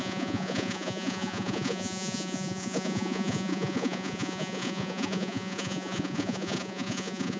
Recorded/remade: remade